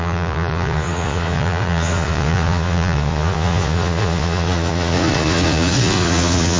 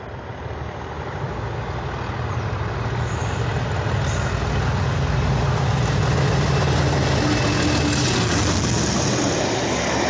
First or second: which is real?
second